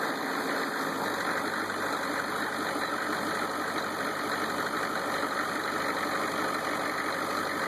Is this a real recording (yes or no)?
yes